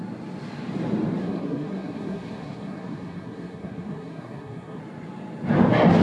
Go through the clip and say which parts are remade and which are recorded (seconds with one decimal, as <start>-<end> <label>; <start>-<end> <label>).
0.0-1.2 recorded; 1.2-4.8 remade; 4.8-6.0 recorded